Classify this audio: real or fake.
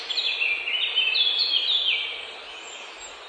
real